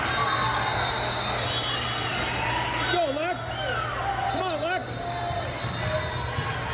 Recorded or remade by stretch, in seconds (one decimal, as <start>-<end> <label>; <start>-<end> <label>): 0.0-6.7 recorded